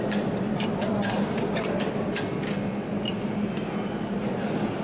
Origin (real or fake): real